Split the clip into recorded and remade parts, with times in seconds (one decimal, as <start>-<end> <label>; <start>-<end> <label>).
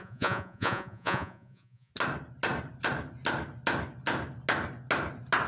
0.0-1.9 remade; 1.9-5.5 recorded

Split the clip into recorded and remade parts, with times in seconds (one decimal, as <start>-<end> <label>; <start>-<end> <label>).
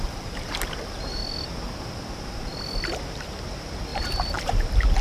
0.0-1.2 remade; 1.2-3.3 recorded; 3.3-5.0 remade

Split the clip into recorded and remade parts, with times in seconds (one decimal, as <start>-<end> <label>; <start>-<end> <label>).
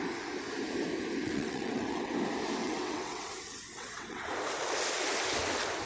0.0-1.2 recorded; 1.2-2.1 remade; 2.1-2.6 recorded; 2.6-4.3 remade; 4.3-5.9 recorded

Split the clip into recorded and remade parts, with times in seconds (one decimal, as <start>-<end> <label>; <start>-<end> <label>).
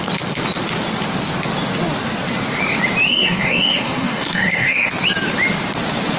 0.0-3.1 recorded; 3.1-4.9 remade; 4.9-6.2 recorded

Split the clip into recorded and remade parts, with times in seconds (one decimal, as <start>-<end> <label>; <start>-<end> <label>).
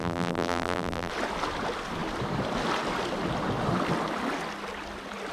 0.0-1.1 remade; 1.1-5.3 recorded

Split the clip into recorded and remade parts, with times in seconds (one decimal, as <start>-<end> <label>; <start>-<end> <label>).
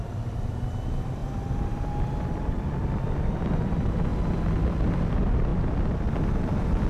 0.0-4.1 remade; 4.1-5.0 recorded; 5.0-5.5 remade; 5.5-6.9 recorded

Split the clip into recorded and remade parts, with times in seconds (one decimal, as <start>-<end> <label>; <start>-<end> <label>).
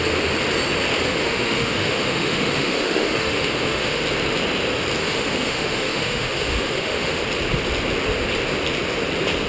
0.0-1.1 recorded; 1.1-4.0 remade; 4.0-5.0 recorded; 5.0-7.2 remade; 7.2-9.5 recorded